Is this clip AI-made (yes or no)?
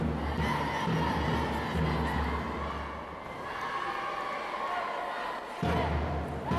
no